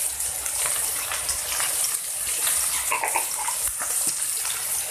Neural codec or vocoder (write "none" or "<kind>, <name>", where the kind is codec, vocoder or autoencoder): vocoder, BigVGAN v2